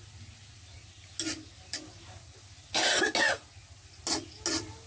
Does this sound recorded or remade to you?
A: recorded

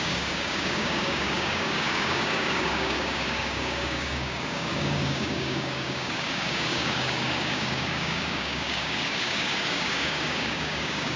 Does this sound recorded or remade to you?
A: remade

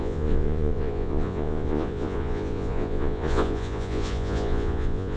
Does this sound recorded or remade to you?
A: remade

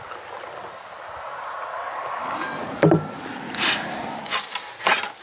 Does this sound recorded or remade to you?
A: recorded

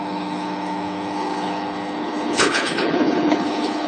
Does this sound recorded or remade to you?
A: remade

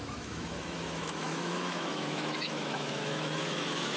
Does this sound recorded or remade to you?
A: remade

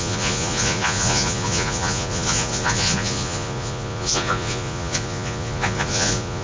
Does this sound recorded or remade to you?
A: remade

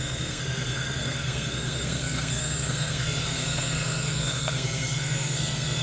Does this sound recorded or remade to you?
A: remade